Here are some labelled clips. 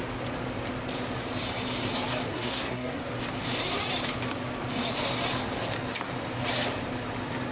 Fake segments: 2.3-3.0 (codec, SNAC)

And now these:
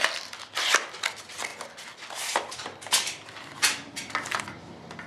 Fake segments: none